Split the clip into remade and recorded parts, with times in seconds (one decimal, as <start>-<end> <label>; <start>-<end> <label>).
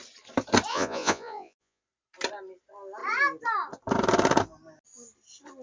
0.0-0.7 recorded; 0.7-1.8 remade; 1.8-5.6 recorded